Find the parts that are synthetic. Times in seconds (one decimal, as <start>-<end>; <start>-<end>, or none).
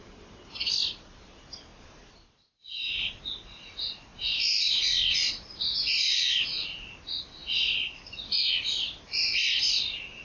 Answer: none